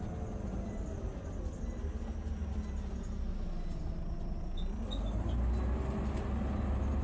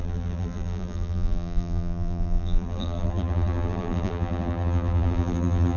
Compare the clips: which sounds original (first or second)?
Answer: first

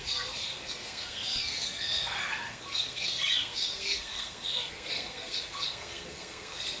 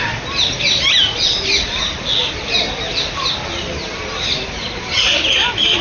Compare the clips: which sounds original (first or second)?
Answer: second